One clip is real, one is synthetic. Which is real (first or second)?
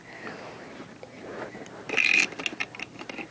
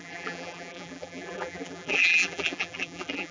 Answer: first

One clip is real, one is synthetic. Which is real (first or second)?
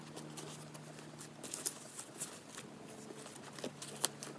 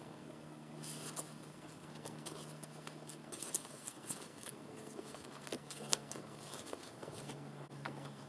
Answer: first